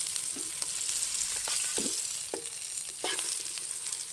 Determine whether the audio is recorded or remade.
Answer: recorded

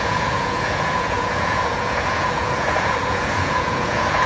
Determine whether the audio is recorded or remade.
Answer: remade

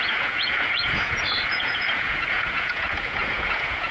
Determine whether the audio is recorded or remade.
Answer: remade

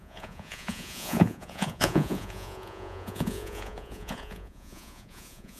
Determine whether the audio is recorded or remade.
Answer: remade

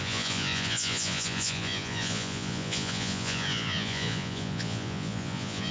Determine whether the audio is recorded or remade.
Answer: remade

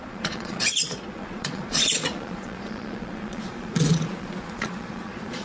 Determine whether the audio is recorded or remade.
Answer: remade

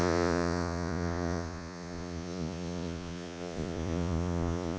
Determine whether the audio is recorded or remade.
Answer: remade